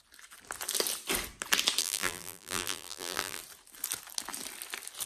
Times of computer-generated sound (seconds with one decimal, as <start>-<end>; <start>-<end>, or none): 1.8-3.4

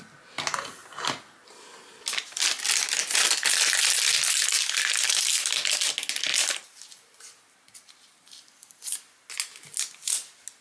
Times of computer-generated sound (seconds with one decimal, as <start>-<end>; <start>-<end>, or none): none

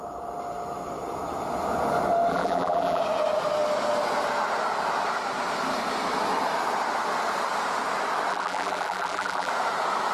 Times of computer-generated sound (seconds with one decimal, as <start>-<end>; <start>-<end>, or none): 2.3-3.0; 8.3-9.5

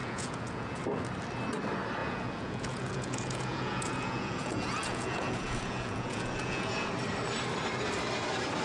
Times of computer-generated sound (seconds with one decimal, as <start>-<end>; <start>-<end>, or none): 0.0-0.8; 2.0-6.9

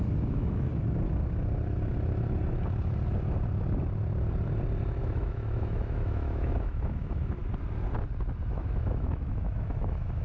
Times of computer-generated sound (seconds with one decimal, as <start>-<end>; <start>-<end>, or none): 0.0-0.7; 5.0-7.4; 8.5-10.2

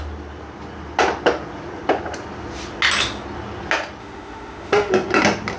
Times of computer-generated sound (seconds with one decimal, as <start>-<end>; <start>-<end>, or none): 4.0-4.9

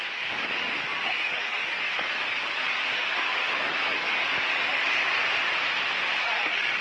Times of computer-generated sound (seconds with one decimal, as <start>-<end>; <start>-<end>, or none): 0.0-5.2; 6.2-6.8

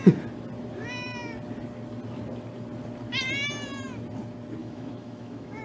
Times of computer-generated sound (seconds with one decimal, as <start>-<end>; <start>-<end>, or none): 4.6-5.6